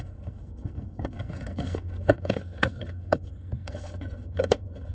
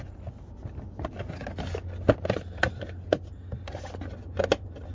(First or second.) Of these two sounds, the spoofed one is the first